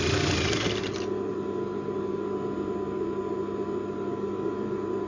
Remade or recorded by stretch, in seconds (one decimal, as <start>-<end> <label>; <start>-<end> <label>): 0.0-5.1 recorded